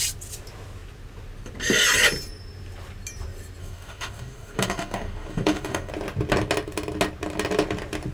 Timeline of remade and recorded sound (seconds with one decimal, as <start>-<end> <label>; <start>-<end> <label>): 0.0-3.6 recorded; 3.6-5.9 remade; 5.9-8.1 recorded